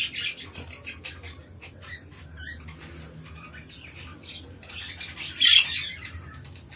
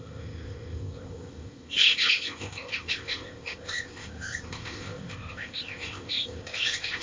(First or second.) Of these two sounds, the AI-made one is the second